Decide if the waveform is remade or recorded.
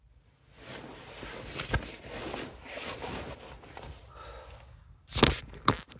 recorded